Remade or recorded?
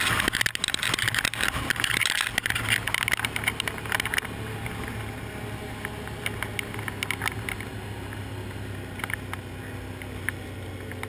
recorded